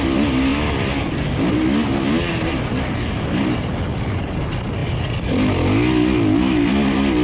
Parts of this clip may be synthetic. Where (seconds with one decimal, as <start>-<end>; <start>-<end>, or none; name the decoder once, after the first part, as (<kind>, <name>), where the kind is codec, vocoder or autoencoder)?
none